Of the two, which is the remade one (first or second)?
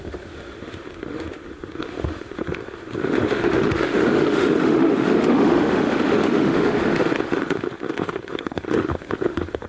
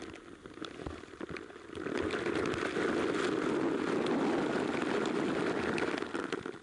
first